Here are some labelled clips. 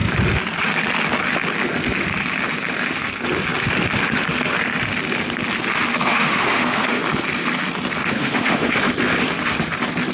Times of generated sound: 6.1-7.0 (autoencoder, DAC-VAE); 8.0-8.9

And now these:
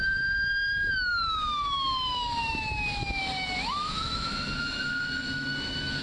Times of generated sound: 0.0-6.0 (autoencoder, DAC-VAE)

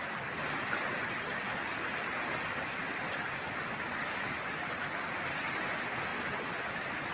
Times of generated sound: none